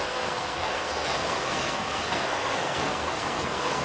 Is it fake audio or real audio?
fake